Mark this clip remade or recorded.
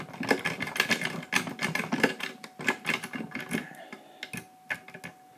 recorded